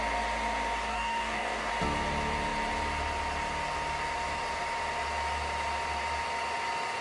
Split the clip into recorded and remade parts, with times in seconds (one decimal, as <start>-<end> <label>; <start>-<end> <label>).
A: 0.0-0.9 recorded; 0.9-1.7 remade; 1.7-7.0 recorded